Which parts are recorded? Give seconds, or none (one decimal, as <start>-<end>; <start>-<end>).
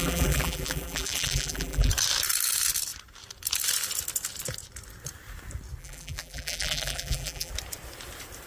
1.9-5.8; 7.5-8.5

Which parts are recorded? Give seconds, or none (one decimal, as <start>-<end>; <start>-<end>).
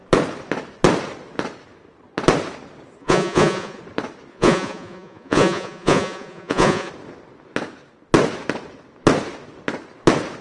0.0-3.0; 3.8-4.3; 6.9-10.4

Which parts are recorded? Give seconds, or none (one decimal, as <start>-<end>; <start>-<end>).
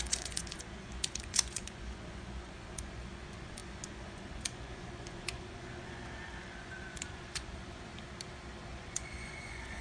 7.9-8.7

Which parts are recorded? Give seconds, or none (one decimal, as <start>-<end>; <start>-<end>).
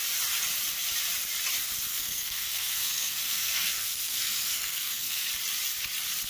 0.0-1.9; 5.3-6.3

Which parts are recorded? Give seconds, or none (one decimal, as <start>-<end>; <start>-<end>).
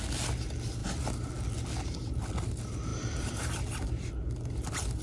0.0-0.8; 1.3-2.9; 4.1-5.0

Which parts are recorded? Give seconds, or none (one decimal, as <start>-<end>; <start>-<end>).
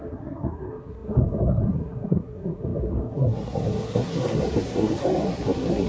none